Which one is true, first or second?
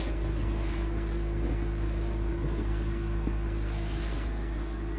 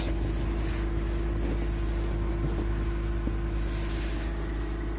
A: second